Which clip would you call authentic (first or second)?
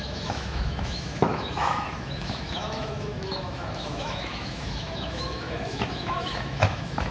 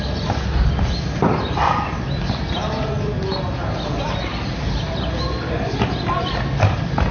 second